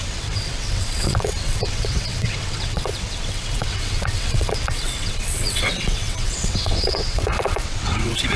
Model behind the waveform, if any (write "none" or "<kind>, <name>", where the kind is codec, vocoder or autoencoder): vocoder, WaveNeXt